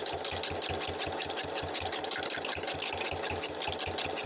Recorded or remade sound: recorded